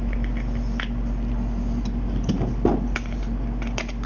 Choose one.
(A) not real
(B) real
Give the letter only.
B